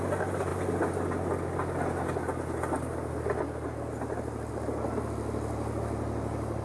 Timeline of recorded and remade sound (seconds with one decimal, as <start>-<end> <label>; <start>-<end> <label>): 0.0-6.6 recorded